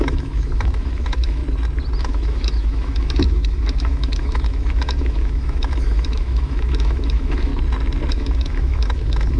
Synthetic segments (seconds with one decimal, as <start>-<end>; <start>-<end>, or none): 0.0-1.4; 2.0-7.5; 8.1-9.4